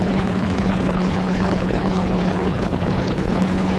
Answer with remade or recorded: remade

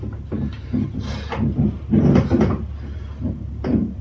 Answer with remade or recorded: recorded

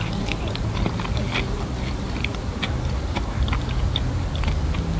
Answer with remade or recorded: recorded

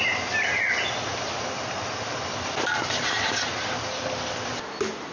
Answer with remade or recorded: recorded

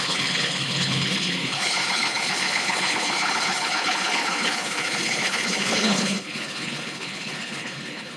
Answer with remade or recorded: remade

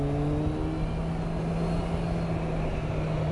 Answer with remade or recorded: recorded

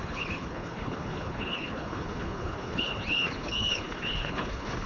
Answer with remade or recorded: remade